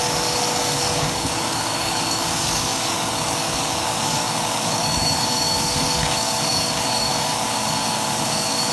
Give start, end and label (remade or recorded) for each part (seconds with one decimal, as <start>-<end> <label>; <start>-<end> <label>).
0.0-8.7 remade